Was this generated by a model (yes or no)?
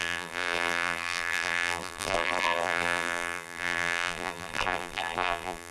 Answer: yes